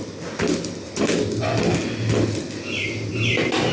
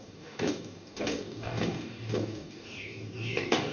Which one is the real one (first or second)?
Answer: first